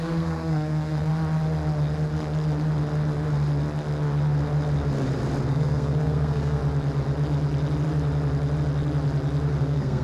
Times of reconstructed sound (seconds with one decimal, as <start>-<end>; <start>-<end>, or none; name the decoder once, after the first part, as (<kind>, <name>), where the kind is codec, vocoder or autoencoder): 0.0-1.1 (codec, SNAC); 5.5-6.6; 9.6-10.0

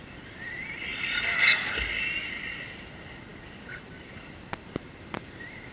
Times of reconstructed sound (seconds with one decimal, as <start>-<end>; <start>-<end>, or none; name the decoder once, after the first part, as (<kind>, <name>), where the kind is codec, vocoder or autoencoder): none

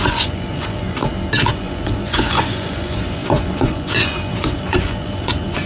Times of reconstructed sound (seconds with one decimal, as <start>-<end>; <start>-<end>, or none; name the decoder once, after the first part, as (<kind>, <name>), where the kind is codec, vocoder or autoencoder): 0.0-1.0 (vocoder, Vocos); 1.5-5.7

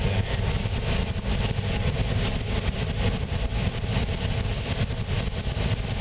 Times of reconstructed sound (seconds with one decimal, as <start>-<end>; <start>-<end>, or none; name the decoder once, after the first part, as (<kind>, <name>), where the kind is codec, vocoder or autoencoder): 3.5-4.2 (vocoder, BigVGAN v2)

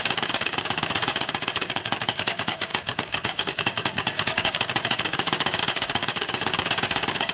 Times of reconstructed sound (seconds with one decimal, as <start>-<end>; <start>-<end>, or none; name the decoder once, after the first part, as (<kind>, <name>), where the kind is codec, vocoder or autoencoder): 0.0-7.3 (codec, DAC)

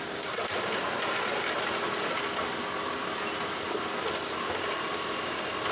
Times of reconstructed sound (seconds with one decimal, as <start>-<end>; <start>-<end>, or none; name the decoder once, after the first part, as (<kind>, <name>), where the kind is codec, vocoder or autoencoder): none

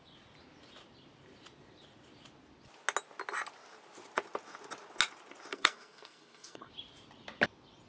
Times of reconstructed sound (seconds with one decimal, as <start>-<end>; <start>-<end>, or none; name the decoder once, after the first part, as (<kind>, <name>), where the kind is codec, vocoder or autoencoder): 5.5-6.7 (codec, SNAC)

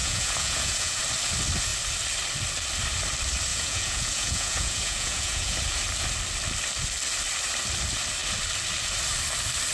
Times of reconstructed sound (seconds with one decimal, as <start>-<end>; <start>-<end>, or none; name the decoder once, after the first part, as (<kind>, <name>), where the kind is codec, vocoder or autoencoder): 0.0-1.0 (vocoder, Vocos); 3.5-5.6